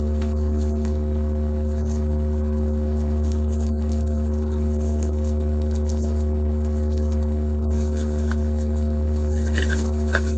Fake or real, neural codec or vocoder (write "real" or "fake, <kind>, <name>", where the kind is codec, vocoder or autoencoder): fake, codec, SNAC